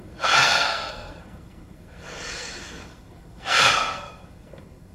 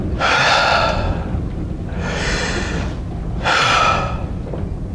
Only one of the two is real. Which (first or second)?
second